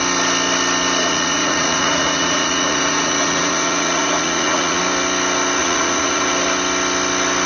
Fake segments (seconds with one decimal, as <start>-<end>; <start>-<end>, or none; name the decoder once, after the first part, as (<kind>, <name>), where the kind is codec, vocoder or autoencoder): 1.0-4.8 (vocoder, Vocos); 5.6-6.3